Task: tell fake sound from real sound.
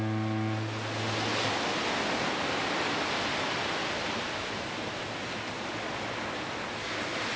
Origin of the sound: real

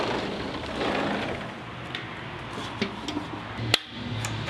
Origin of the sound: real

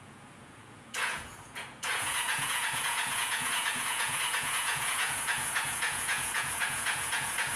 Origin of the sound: fake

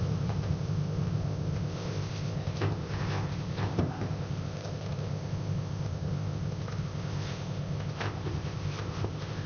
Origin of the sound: fake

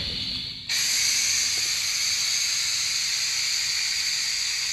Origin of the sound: real